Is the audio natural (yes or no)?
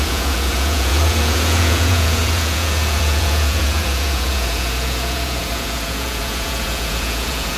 no